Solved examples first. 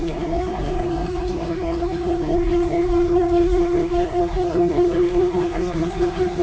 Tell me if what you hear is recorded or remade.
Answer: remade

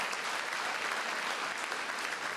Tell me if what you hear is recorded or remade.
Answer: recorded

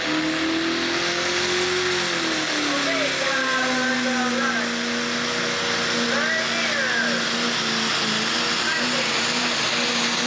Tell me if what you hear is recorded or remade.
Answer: recorded